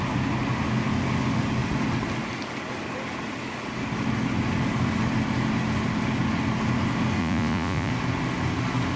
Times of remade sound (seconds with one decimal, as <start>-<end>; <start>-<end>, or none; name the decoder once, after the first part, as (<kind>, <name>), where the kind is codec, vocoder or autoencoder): 7.2-7.9 (vocoder, Vocos)